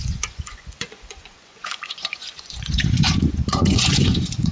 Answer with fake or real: fake